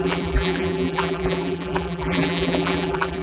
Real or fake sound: fake